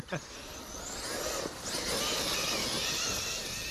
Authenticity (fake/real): real